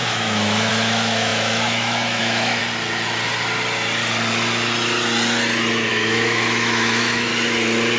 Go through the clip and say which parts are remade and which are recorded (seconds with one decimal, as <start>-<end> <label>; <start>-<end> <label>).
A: 0.0-2.6 remade; 2.6-5.9 recorded; 5.9-7.3 remade; 7.3-8.0 recorded